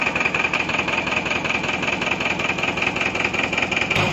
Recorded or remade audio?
recorded